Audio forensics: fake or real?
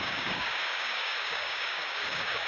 fake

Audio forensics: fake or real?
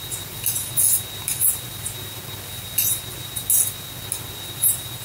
real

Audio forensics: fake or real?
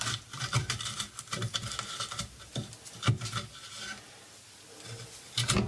real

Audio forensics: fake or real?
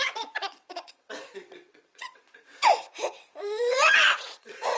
fake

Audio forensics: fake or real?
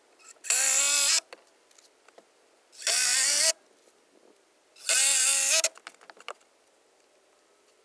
real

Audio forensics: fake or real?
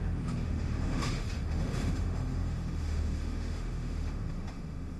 fake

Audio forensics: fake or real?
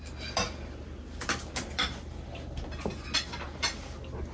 real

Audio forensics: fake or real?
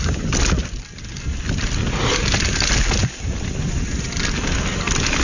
real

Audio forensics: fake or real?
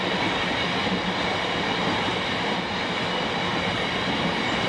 real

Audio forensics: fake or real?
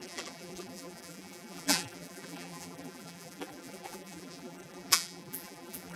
fake